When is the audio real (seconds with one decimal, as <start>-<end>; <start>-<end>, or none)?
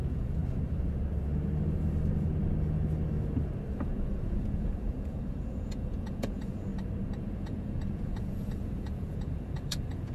0.4-3.7; 6.7-7.2